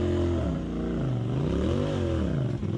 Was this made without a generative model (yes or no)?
yes